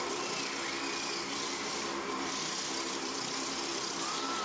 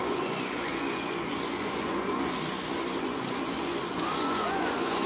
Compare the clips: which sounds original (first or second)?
first